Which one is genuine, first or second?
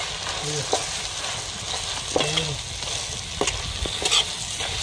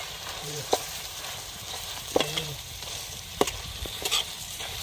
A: first